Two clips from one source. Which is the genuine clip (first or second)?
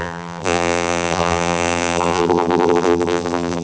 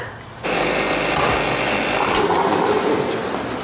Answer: second